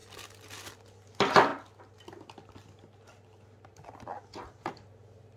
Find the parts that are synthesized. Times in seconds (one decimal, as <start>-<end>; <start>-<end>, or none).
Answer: 0.0-1.5; 4.7-5.4